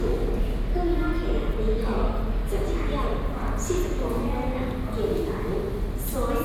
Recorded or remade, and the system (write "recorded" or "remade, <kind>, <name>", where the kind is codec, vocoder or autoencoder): recorded